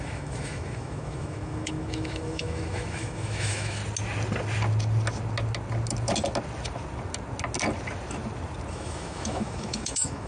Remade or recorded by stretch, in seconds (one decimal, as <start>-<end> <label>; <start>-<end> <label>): 0.0-3.8 remade; 3.8-8.7 recorded; 8.7-10.3 remade